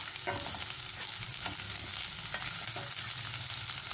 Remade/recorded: recorded